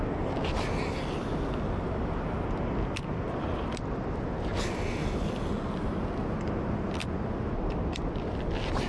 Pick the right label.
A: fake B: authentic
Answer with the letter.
B